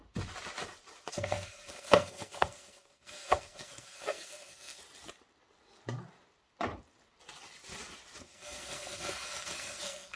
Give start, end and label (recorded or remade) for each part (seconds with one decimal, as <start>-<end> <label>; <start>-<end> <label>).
0.0-1.1 recorded; 1.1-4.8 remade; 4.8-8.2 recorded; 8.2-10.2 remade